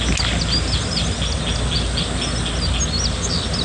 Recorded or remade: recorded